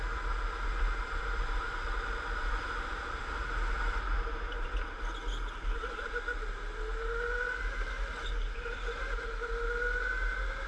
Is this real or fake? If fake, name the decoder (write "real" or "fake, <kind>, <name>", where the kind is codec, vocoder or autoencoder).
real